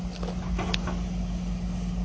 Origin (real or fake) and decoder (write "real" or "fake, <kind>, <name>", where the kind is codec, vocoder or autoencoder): real